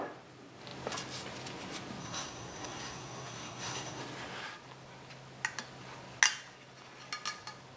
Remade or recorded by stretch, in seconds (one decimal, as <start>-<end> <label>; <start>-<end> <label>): 0.0-2.0 recorded; 2.0-4.0 remade; 4.0-7.8 recorded